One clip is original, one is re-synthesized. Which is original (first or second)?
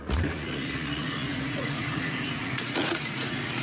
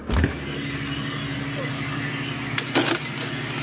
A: second